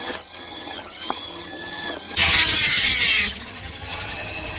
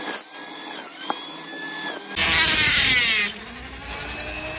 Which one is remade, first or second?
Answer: first